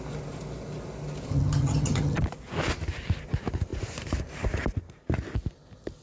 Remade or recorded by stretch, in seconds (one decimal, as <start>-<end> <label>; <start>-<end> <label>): 0.0-1.3 recorded; 1.3-2.2 remade; 2.2-6.0 recorded